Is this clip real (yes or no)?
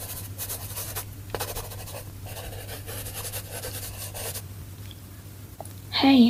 yes